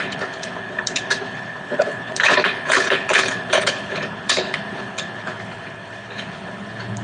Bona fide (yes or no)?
no